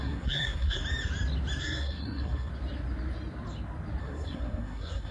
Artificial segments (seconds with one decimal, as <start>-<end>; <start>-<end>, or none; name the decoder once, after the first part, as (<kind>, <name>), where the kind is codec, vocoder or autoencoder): 0.0-0.8 (codec, SNAC); 1.6-2.5; 4.0-5.1